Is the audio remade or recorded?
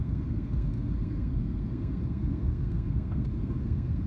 remade